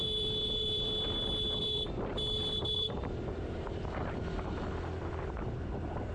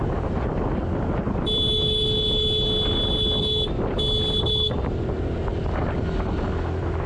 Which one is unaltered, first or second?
second